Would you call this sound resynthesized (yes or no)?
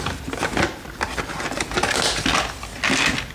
no